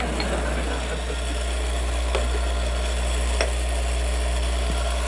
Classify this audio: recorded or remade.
recorded